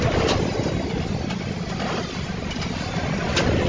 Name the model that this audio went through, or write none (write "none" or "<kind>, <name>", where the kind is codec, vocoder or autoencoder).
none